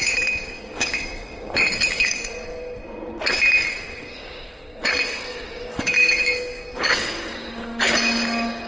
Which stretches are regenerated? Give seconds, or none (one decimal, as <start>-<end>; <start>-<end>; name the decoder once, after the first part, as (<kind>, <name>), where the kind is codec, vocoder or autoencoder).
0.0-2.8 (codec, DAC); 3.7-8.7